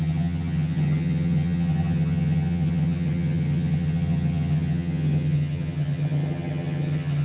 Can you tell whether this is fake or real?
fake